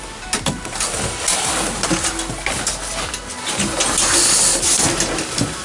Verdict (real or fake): real